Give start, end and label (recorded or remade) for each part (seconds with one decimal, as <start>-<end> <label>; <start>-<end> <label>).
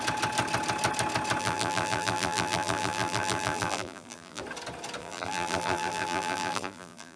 0.0-1.4 recorded; 1.4-4.4 remade; 4.4-5.0 recorded; 5.0-7.2 remade